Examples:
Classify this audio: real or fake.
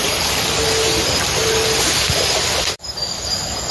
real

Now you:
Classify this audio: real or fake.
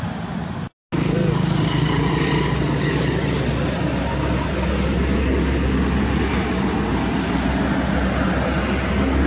real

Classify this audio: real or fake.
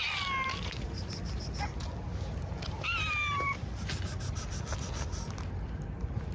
real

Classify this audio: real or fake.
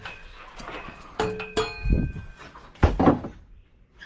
real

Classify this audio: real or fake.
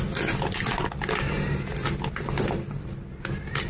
real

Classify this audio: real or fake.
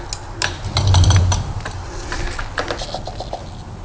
real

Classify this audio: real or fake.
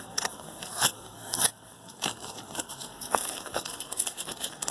fake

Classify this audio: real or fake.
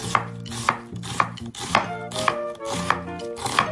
real